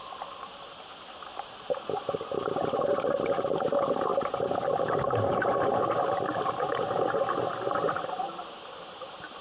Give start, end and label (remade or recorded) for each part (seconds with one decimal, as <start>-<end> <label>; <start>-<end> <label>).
0.0-9.4 recorded

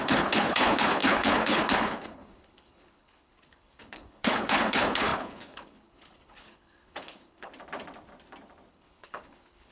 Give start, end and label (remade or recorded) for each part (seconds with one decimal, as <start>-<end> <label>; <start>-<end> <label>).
0.0-7.5 remade; 7.5-8.7 recorded; 8.7-9.7 remade

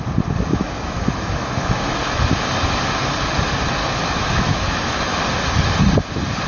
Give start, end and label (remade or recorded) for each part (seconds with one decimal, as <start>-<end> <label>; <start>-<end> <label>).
0.0-0.5 recorded; 0.5-2.2 remade; 2.2-3.8 recorded; 3.8-5.2 remade; 5.2-6.5 recorded

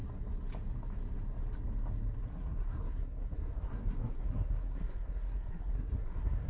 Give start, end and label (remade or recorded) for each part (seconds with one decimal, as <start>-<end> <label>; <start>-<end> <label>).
0.0-2.3 recorded; 2.3-6.5 remade

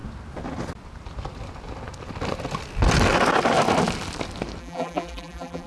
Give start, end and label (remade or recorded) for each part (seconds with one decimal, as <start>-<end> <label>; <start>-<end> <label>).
0.0-4.6 recorded; 4.6-5.7 remade

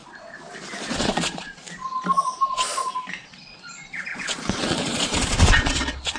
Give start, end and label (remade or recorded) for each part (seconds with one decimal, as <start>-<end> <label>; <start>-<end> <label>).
0.0-0.8 recorded; 0.8-1.8 remade; 1.8-3.2 recorded; 3.2-6.2 remade